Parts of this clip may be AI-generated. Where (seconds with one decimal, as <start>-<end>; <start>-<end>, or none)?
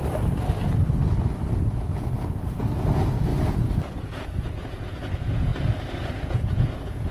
1.5-3.3; 3.9-5.5; 6.1-7.1